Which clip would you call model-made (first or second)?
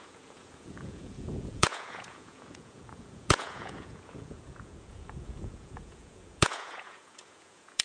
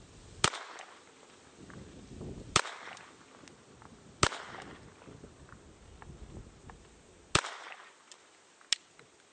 first